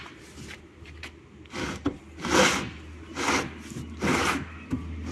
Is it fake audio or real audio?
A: real